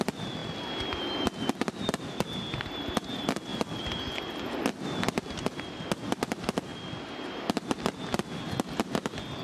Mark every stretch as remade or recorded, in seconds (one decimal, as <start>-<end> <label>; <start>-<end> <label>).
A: 0.0-9.4 recorded